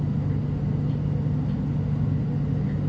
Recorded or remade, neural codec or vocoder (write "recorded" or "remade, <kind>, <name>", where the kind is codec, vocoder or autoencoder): recorded